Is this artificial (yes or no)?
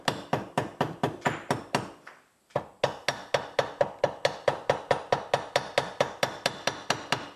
no